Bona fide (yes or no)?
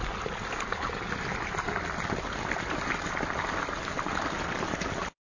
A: yes